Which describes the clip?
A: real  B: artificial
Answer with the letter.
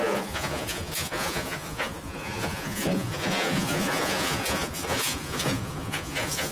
B